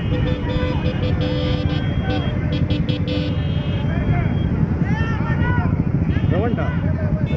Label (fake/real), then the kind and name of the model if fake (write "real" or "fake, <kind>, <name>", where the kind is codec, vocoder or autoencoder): real